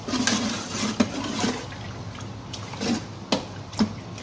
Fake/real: real